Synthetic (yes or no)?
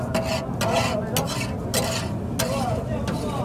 no